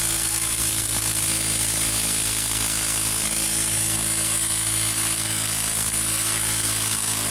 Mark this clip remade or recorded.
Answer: remade